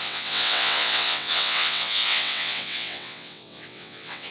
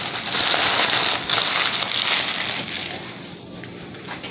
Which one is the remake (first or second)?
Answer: first